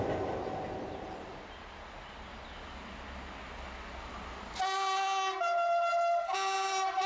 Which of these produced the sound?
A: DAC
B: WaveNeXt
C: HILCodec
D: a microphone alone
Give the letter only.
D